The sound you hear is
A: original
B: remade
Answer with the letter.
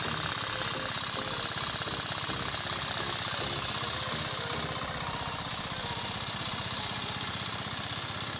A